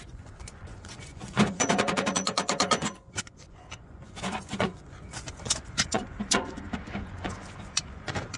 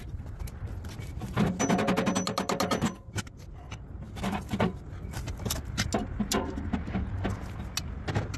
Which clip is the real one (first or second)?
second